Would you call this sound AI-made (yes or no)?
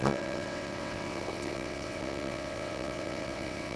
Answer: yes